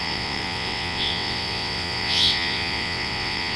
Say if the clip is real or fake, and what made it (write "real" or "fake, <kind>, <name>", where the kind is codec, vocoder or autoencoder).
fake, vocoder, WaveNeXt